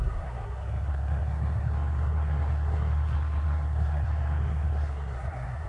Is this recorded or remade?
remade